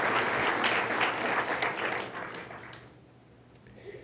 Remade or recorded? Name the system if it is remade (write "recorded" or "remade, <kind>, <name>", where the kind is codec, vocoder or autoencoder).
recorded